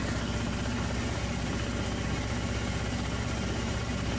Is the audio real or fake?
real